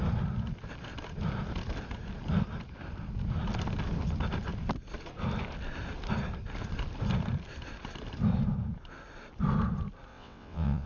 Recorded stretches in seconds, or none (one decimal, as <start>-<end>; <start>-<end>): 0.0-10.1